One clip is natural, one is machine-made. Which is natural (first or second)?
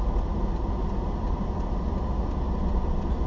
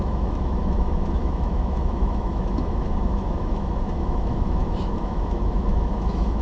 first